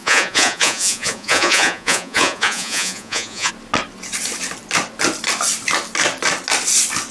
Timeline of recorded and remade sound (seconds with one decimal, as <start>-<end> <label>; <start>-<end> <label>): 0.0-3.5 remade; 3.5-7.1 recorded